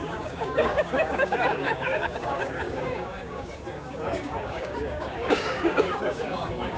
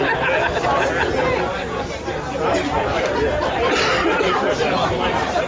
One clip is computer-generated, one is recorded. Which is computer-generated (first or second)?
first